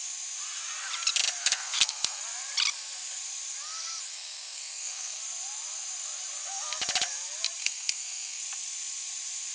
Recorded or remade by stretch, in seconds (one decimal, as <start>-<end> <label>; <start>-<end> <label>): 0.0-1.4 recorded; 1.4-2.2 remade; 2.2-4.1 recorded; 4.1-5.2 remade; 5.2-7.6 recorded; 7.6-8.4 remade; 8.4-9.5 recorded